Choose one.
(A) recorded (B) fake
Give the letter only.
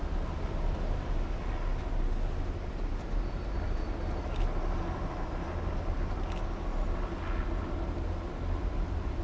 A